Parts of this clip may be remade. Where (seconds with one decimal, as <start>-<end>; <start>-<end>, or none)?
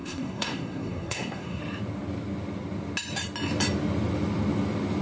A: 0.0-1.6